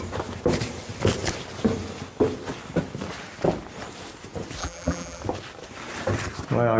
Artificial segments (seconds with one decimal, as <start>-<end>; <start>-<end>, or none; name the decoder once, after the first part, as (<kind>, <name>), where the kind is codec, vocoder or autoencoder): 4.6-5.2 (vocoder, BigVGAN v2)